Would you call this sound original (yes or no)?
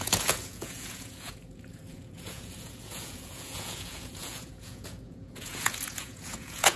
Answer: no